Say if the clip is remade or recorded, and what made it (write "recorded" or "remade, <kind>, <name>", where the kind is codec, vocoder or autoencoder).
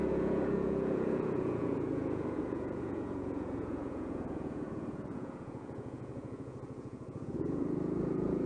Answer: remade, vocoder, Vocos